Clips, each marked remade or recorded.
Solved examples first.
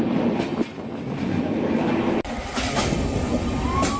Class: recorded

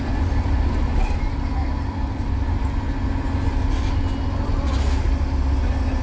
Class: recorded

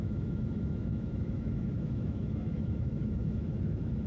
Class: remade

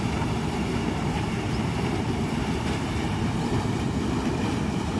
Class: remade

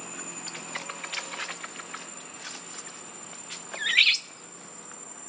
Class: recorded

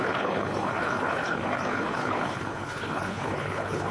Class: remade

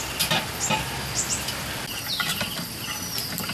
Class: recorded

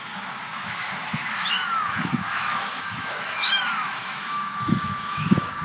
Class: remade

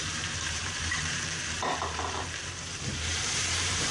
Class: remade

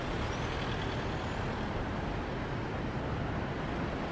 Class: recorded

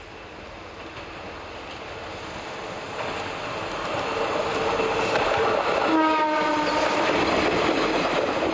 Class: recorded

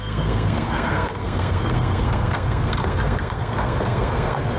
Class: remade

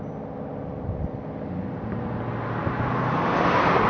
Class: recorded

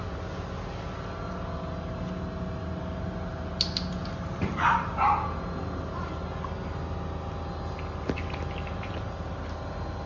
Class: recorded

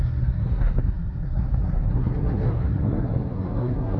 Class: remade